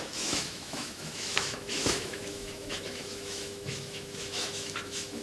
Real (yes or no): no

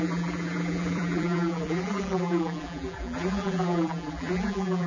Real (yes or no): no